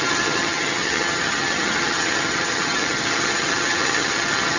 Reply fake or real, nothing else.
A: fake